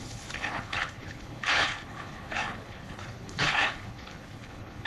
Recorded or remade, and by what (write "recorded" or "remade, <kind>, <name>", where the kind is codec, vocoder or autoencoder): remade, codec, HILCodec